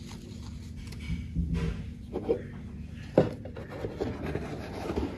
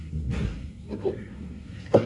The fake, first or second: second